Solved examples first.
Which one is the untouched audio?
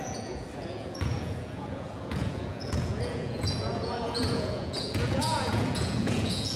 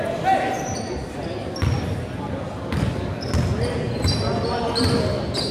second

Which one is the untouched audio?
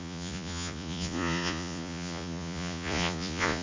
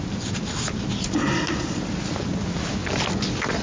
second